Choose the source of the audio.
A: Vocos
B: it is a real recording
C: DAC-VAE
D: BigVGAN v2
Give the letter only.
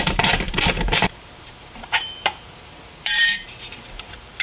D